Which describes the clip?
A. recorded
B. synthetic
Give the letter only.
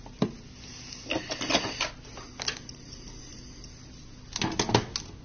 A